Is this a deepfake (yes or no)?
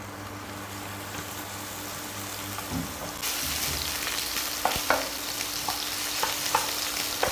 no